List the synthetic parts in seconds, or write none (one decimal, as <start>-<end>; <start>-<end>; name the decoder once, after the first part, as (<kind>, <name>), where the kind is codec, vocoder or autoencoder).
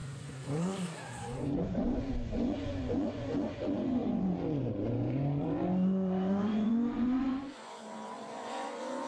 0.0-9.1 (vocoder, Vocos)